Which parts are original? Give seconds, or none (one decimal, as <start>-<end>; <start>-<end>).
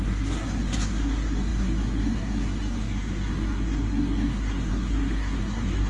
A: none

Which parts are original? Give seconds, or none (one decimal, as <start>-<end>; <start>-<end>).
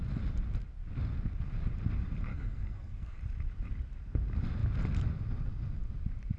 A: 0.0-2.3; 3.2-6.4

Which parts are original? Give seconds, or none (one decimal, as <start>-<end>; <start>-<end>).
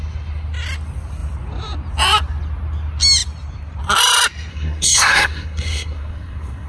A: 0.0-4.5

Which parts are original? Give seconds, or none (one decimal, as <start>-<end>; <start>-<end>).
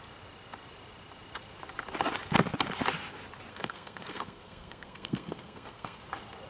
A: 0.0-3.5; 6.0-6.5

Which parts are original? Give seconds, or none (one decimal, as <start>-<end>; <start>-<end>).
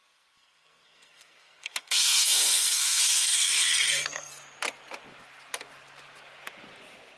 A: 4.3-7.2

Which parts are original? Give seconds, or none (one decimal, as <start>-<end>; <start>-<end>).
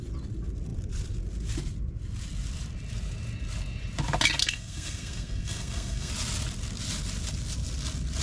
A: 0.0-4.4; 6.1-8.2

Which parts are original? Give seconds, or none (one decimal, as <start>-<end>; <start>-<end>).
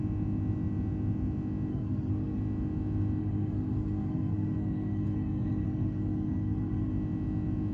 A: 0.0-1.7; 2.4-3.2; 6.9-7.7